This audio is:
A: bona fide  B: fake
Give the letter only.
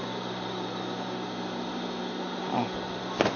A